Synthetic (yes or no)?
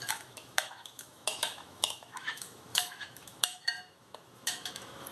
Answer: yes